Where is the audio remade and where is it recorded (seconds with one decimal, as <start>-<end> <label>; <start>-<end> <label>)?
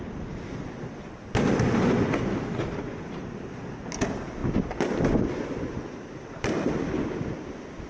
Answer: 0.0-7.9 recorded